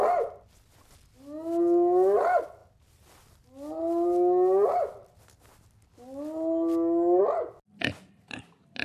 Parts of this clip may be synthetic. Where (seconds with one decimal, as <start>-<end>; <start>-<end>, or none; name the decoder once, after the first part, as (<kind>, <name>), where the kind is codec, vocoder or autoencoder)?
none